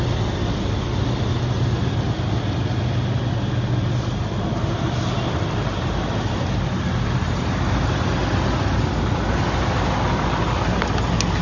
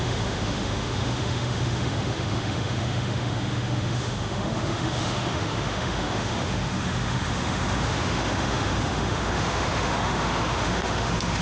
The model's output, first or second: second